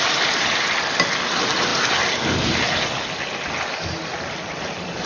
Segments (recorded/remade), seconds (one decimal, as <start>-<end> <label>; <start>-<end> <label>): 0.0-1.7 remade; 1.7-3.7 recorded; 3.7-5.1 remade

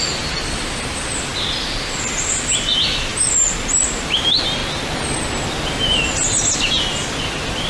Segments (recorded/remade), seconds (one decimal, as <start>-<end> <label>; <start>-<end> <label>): 0.0-7.7 recorded

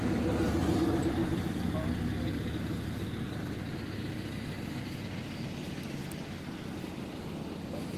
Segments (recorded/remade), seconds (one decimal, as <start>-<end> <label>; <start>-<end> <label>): 0.0-8.0 recorded

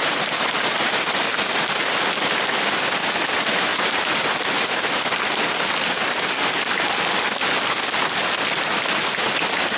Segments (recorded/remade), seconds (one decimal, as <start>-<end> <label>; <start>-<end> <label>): 0.0-3.7 recorded; 3.7-4.6 remade; 4.6-9.8 recorded

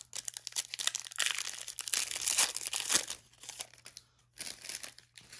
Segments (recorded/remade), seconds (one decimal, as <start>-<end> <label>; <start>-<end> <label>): 0.0-5.4 recorded